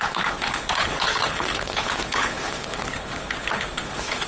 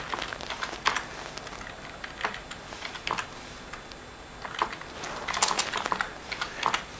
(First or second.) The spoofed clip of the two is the first